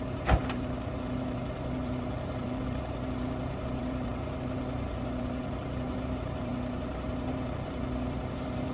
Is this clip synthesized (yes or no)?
yes